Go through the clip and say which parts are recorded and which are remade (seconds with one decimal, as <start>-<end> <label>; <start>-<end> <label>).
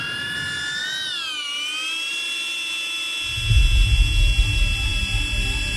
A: 0.0-5.8 recorded